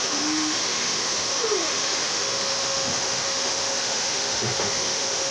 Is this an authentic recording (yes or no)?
no